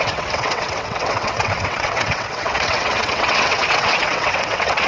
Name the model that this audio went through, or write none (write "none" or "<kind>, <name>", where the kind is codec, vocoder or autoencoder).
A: vocoder, WaveNeXt